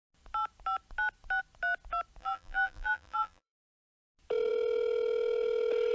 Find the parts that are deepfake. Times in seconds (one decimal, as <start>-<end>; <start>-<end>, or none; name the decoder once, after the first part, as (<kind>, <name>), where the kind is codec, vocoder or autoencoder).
2.2-3.6 (vocoder, BigVGAN v2)